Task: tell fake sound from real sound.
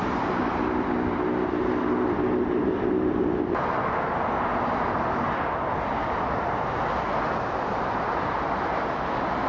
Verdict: real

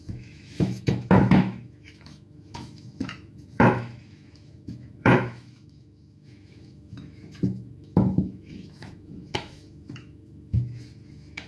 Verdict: fake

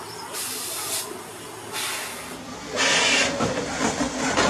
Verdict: real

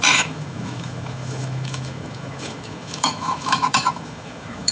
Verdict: fake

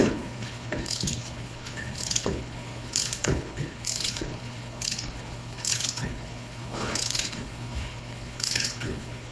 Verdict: fake